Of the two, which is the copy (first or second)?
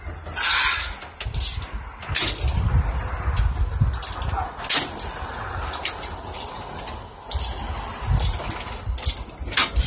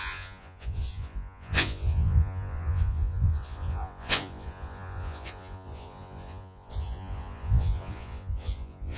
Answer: second